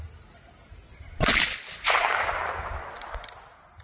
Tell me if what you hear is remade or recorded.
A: recorded